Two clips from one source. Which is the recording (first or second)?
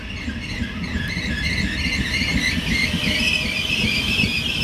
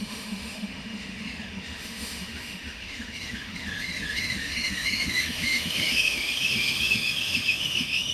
first